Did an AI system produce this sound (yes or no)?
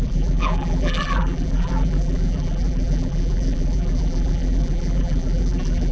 yes